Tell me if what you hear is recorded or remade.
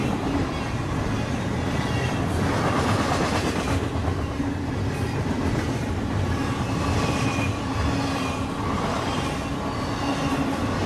recorded